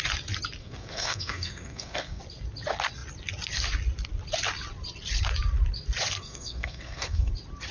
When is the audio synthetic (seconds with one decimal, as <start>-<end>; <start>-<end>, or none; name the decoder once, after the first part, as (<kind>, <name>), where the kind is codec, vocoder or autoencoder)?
0.6-2.2 (codec, SNAC); 6.2-7.3